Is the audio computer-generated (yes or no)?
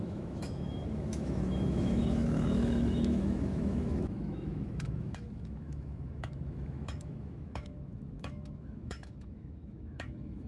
yes